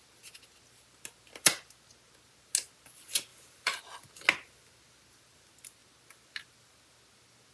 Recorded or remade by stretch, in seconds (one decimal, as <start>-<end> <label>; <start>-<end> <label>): 0.0-3.3 recorded; 3.3-3.8 remade; 3.8-7.5 recorded